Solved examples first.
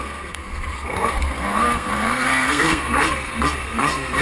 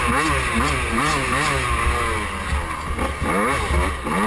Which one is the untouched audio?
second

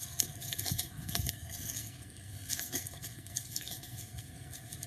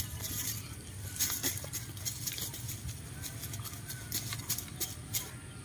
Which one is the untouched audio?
second